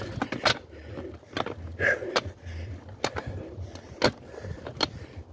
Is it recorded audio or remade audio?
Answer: recorded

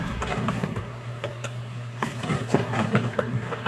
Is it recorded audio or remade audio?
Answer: remade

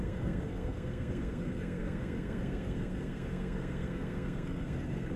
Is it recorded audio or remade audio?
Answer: remade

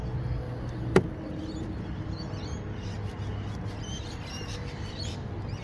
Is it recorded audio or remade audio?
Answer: recorded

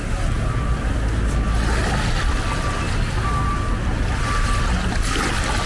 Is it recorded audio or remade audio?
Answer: recorded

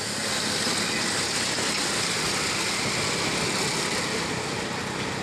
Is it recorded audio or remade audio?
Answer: recorded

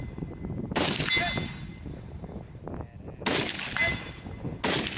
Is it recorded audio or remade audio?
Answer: recorded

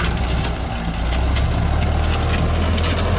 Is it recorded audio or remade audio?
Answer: recorded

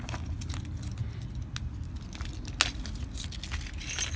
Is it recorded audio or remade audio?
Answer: recorded